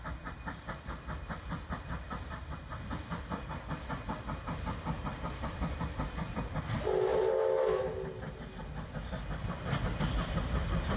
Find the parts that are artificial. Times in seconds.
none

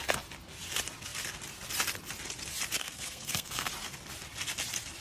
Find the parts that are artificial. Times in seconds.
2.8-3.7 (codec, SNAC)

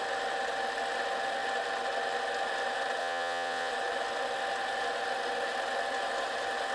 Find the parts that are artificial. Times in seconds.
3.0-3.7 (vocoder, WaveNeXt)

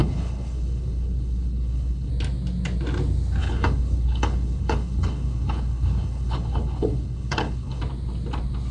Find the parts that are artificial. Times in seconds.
0.0-2.1 (codec, HILCodec); 3.4-7.8

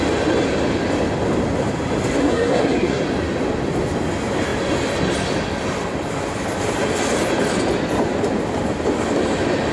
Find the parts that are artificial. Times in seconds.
2.2-3.0 (codec, SNAC)

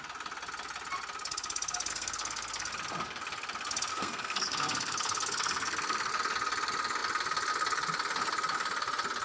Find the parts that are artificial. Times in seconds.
1.9-2.7 (codec, SNAC); 3.9-6.1